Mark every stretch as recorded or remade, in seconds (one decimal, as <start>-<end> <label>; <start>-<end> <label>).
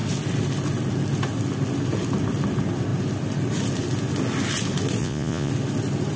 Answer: 0.0-5.0 recorded; 5.0-5.5 remade; 5.5-6.2 recorded